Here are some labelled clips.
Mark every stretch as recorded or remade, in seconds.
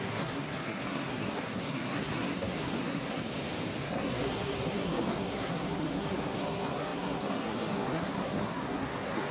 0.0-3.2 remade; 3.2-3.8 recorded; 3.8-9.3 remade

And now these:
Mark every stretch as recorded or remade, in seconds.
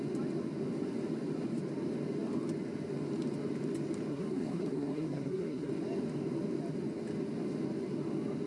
0.0-4.1 recorded; 4.1-5.7 remade; 5.7-8.5 recorded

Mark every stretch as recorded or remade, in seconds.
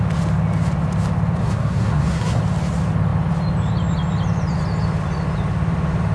0.0-1.4 recorded; 1.4-2.4 remade; 2.4-6.1 recorded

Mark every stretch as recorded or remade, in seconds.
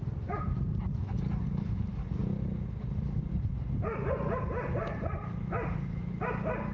0.0-6.7 recorded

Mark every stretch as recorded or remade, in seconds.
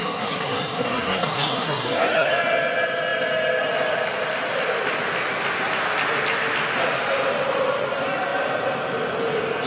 0.0-2.3 remade; 2.3-9.7 recorded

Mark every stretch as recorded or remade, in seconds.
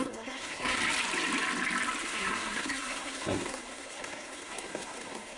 0.0-0.8 remade; 0.8-2.0 recorded; 2.0-5.4 remade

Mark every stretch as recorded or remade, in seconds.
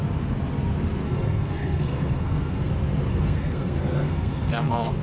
0.0-1.0 recorded; 1.0-2.7 remade; 2.7-3.1 recorded; 3.1-5.0 remade